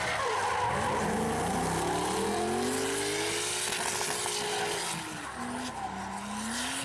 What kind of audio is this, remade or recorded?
recorded